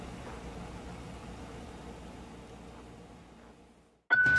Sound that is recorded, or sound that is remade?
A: recorded